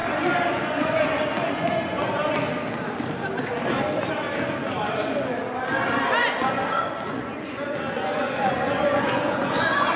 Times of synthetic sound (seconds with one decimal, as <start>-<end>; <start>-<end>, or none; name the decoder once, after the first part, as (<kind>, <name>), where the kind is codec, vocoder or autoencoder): 0.5-2.2 (vocoder, Vocos); 6.2-10.0